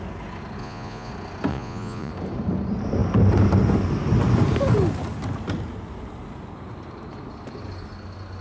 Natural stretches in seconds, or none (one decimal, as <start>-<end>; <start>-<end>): 0.0-0.6; 1.1-1.5; 2.1-8.4